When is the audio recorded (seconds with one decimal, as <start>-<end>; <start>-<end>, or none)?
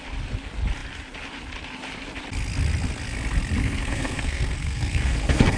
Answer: 0.0-3.6